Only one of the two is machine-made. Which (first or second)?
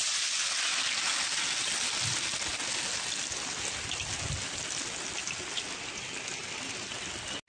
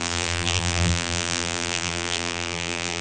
second